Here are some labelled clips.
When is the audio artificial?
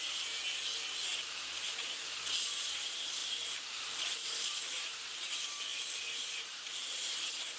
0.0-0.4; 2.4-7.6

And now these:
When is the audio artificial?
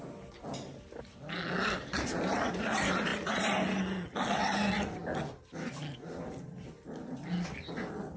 none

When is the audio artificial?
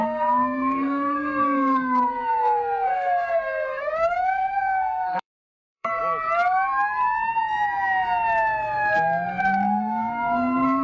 0.0-6.0; 9.4-10.8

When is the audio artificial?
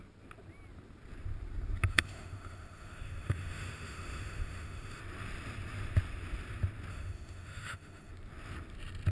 1.9-5.0; 6.9-8.1